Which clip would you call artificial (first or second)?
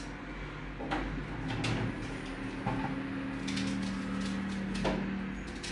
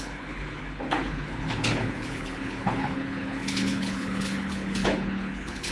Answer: second